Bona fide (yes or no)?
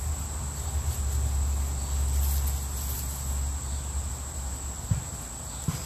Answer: yes